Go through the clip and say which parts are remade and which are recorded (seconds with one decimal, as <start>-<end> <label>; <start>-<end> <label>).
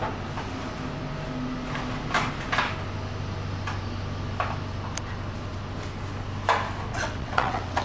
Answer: 0.0-6.9 recorded; 6.9-7.8 remade